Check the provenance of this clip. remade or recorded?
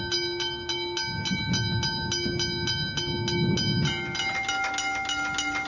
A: recorded